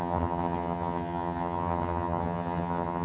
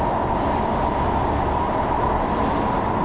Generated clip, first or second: first